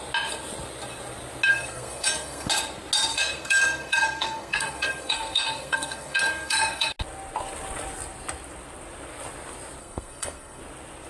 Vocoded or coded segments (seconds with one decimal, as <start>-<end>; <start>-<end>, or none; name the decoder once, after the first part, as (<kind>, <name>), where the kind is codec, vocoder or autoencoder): 1.5-2.5 (codec, SNAC); 3.1-6.9; 9.8-10.6